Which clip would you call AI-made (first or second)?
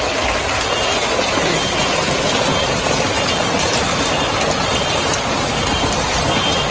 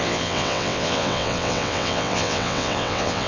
second